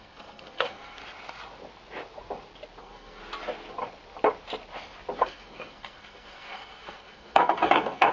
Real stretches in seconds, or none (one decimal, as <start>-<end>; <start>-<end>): 1.0-2.8; 3.2-5.2